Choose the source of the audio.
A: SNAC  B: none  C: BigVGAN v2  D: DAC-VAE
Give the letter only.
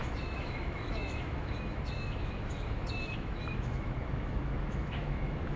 D